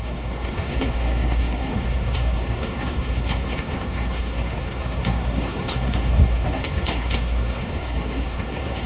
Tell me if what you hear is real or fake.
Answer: fake